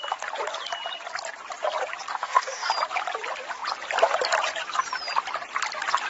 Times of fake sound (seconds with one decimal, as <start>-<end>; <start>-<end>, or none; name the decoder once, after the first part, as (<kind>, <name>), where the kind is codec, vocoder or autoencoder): 2.1-2.7 (codec, DAC)